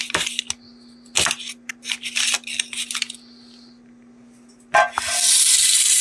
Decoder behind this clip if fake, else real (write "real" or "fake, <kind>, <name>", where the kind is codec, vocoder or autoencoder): real